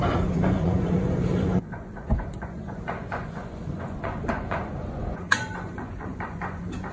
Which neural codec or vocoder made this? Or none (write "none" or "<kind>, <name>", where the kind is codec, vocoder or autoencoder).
vocoder, Vocos